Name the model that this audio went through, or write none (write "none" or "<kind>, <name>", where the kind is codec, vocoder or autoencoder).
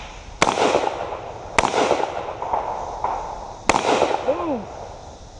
none